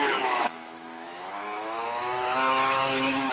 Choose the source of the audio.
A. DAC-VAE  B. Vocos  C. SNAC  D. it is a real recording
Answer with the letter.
A